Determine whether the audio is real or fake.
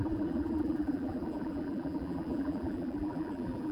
fake